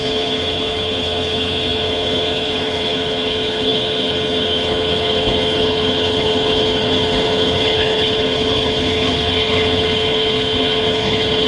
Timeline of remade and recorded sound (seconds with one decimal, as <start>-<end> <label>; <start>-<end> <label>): 0.0-11.5 remade